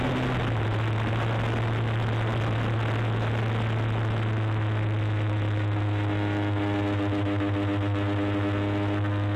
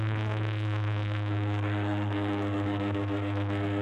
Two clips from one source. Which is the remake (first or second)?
second